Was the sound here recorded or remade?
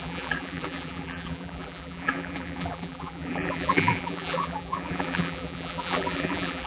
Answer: remade